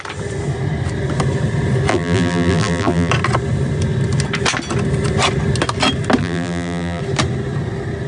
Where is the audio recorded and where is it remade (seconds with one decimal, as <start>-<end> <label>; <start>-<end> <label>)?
0.0-1.9 recorded; 1.9-3.1 remade; 3.1-6.2 recorded; 6.2-7.0 remade; 7.0-8.1 recorded